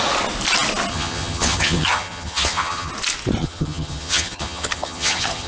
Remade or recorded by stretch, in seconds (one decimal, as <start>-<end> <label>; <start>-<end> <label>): 0.0-0.9 recorded; 0.9-2.9 remade; 2.9-3.4 recorded; 3.4-5.5 remade